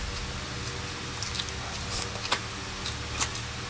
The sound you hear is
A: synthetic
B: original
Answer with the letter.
B